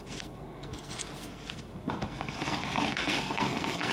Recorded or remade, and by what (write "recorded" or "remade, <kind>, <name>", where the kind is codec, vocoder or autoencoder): remade, codec, SNAC